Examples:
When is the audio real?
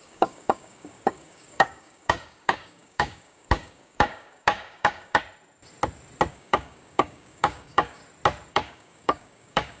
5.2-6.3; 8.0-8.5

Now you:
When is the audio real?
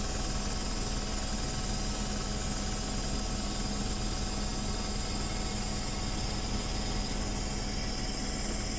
0.0-8.8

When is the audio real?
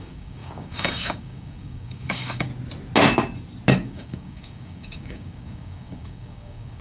2.5-3.7